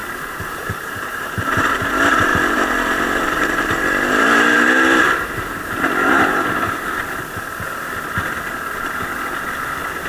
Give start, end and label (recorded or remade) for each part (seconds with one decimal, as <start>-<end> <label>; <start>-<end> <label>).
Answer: 0.0-1.9 remade; 1.9-2.3 recorded; 2.3-7.2 remade; 7.2-10.1 recorded